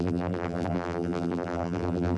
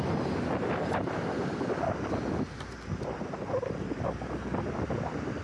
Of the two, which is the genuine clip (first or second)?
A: second